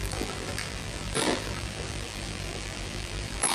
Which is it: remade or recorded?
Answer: remade